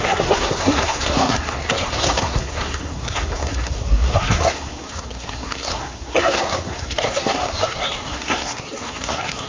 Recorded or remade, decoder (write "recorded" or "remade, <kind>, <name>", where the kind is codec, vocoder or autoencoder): remade, codec, SNAC